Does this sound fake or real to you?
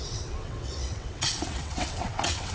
fake